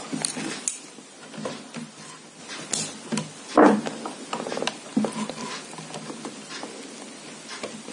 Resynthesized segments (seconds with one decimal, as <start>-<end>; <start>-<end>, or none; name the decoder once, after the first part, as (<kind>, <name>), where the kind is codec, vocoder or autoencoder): none